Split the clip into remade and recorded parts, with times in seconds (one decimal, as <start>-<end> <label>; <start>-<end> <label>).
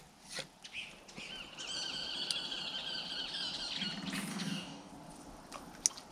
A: 0.0-4.3 recorded; 4.3-4.9 remade; 4.9-6.1 recorded